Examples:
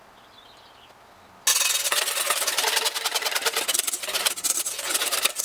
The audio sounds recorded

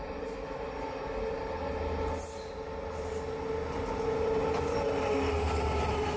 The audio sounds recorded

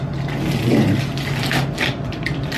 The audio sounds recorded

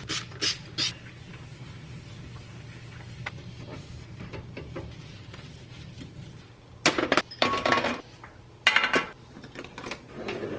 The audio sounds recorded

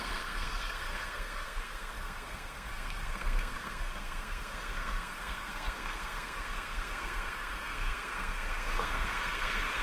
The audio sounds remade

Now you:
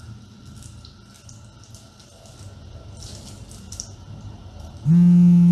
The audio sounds recorded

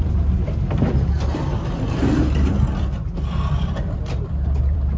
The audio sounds remade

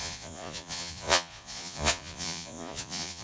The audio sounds remade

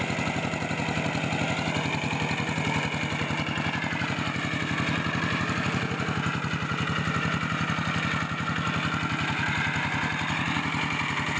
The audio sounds recorded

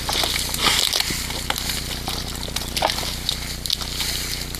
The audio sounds recorded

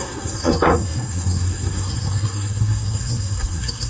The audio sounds remade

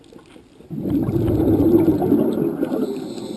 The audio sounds recorded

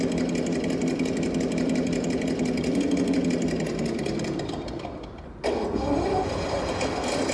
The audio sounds recorded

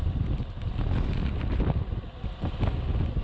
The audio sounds recorded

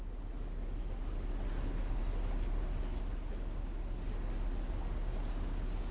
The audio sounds recorded